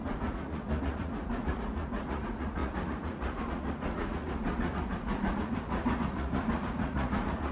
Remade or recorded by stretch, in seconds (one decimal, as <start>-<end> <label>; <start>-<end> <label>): 0.0-7.5 remade